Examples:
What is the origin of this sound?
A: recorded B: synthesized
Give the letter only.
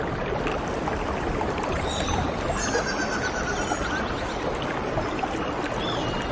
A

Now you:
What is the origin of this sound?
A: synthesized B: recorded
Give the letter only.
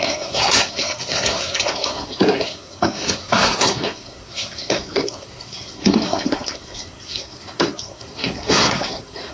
A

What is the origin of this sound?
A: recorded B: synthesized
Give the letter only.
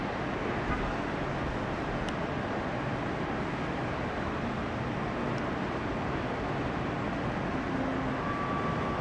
A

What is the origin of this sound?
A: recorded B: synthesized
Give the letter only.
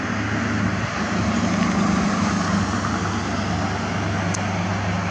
A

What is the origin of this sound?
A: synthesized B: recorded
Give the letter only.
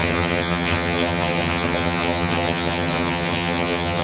A